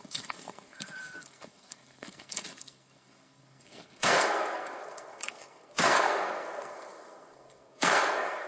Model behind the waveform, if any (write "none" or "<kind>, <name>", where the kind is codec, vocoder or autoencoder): codec, SNAC